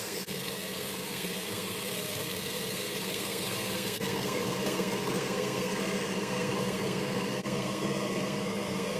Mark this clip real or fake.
fake